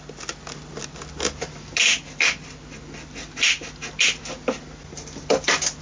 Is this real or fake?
real